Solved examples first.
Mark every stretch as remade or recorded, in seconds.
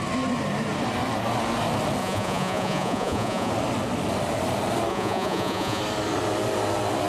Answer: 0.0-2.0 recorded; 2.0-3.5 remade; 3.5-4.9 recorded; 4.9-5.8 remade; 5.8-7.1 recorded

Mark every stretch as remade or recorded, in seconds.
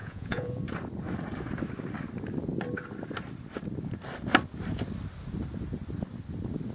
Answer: 0.0-0.6 remade; 0.6-6.7 recorded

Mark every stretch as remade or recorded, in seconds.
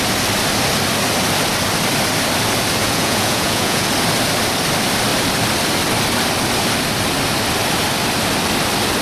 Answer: 0.0-2.8 recorded; 2.8-3.9 remade; 3.9-9.0 recorded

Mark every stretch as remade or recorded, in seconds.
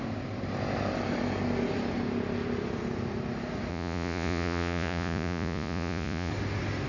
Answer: 0.0-3.7 recorded; 3.7-6.3 remade; 6.3-6.9 recorded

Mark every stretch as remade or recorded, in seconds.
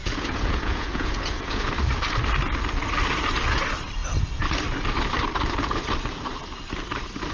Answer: 0.0-1.7 remade; 1.7-7.3 recorded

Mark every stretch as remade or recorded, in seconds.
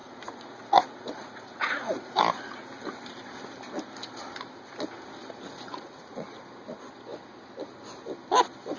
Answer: 0.0-2.2 remade; 2.2-5.7 recorded; 5.7-6.4 remade; 6.4-8.8 recorded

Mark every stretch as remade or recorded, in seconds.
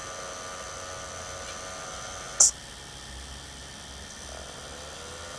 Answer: 0.0-5.4 recorded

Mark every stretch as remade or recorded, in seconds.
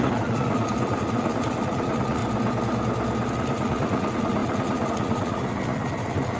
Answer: 0.0-2.2 remade; 2.2-3.3 recorded; 3.3-6.4 remade